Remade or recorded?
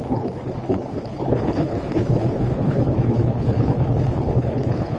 remade